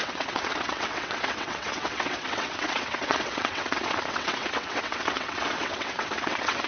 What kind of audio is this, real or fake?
fake